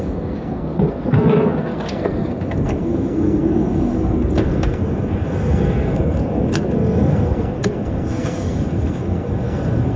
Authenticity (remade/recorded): remade